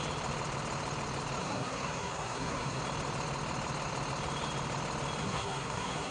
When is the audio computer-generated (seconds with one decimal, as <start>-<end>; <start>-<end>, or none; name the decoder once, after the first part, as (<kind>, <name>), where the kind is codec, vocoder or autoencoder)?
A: 1.4-2.8 (codec, SNAC); 5.2-6.1